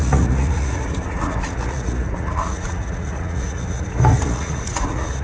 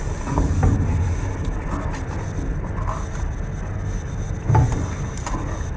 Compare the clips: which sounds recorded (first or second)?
second